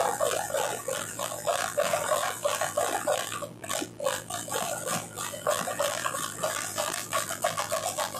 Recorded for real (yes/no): no